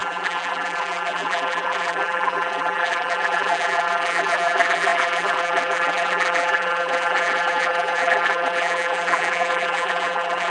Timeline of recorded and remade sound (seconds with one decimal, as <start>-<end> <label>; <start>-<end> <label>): 0.0-10.5 remade